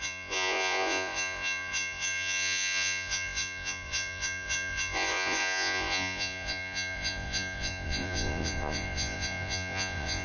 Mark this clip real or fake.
fake